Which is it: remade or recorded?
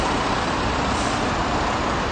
remade